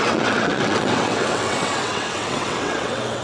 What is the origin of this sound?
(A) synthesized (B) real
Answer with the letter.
A